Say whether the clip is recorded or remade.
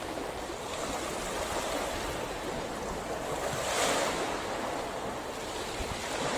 recorded